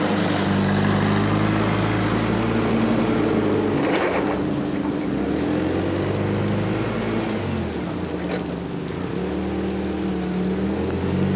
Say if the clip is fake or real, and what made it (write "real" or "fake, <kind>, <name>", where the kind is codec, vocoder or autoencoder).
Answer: real